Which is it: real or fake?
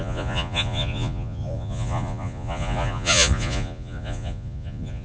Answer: fake